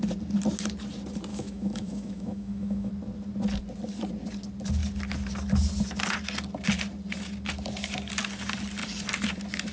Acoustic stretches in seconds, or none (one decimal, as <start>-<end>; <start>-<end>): 0.0-1.3; 2.9-9.7